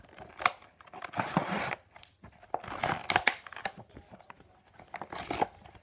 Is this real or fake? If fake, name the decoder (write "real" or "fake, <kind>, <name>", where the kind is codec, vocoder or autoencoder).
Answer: real